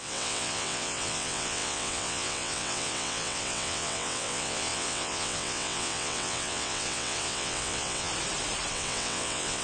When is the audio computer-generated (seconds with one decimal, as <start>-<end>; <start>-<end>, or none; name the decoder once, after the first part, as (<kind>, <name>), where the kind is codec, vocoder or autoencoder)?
0.0-8.1 (vocoder, WaveNeXt); 8.7-9.6